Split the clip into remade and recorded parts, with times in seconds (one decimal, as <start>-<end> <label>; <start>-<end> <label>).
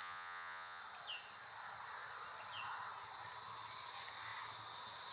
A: 0.0-0.8 remade; 0.8-5.1 recorded